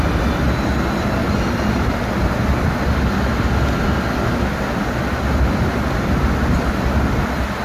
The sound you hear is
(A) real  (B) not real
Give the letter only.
A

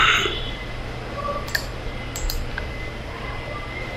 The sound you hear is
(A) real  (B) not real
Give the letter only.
A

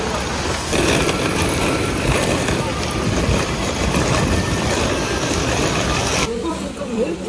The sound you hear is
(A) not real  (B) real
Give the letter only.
A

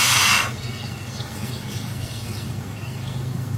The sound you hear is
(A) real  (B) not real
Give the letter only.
B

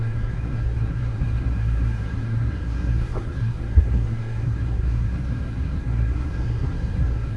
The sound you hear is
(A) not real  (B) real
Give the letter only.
A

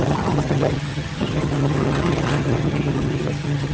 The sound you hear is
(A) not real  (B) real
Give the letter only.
A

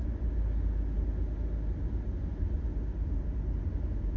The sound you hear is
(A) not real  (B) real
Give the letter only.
B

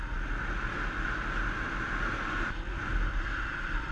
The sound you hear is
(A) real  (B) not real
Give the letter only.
A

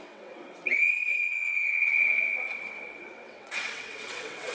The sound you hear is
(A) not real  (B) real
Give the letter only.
A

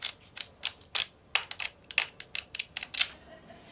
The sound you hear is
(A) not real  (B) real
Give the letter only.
B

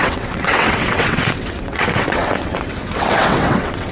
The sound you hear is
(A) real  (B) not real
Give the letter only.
B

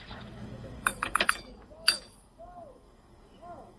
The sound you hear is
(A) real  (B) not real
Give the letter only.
B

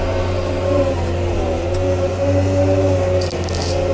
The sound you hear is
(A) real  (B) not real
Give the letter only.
A